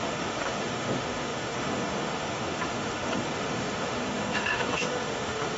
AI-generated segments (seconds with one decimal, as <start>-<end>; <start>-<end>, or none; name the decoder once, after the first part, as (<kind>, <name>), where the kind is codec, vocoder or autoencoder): 0.0-5.6 (autoencoder, DAC-VAE)